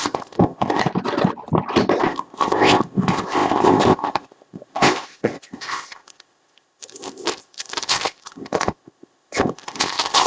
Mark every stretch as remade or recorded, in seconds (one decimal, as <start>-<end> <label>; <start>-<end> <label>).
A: 0.0-0.8 remade; 0.8-2.0 recorded; 2.0-10.3 remade